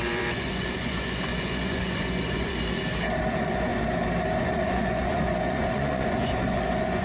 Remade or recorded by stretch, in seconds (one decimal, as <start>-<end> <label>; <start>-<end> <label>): 0.0-2.5 remade; 2.5-3.3 recorded; 3.3-3.7 remade; 3.7-4.4 recorded; 4.4-7.0 remade